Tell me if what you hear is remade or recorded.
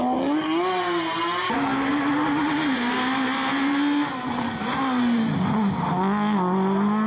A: recorded